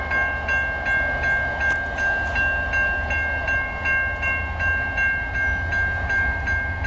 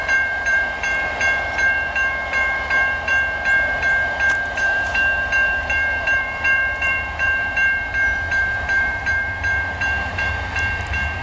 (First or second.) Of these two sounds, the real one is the first